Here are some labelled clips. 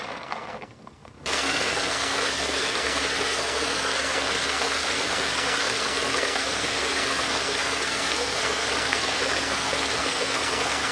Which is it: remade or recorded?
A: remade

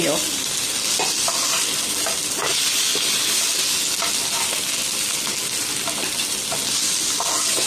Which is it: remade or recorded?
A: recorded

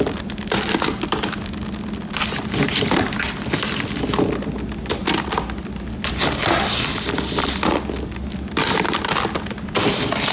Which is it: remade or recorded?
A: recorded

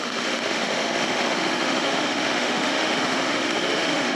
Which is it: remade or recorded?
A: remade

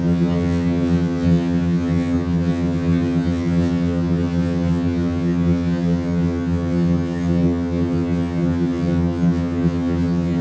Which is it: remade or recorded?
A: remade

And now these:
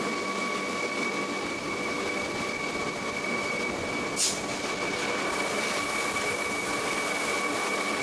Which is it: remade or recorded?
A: recorded